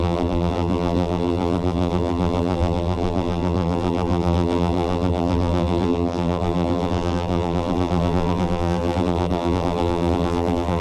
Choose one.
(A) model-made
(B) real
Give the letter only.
A